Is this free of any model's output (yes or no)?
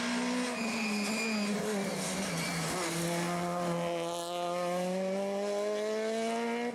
yes